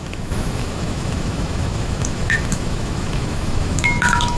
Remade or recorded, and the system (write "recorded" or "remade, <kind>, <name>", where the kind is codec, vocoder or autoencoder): remade, autoencoder, DAC-VAE